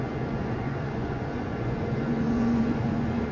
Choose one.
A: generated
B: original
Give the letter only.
A